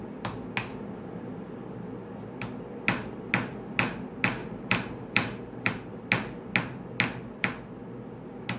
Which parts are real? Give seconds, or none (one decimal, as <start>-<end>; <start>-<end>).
0.0-0.7; 1.3-4.4; 6.0-8.6